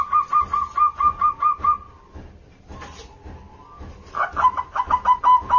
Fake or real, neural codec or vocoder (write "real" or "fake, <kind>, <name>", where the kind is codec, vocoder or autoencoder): real